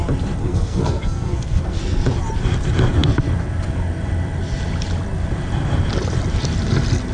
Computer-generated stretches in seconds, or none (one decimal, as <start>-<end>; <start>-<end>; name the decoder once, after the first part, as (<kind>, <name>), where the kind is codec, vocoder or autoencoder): 0.4-1.8 (codec, SNAC)